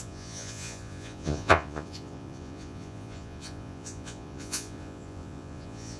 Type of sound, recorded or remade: remade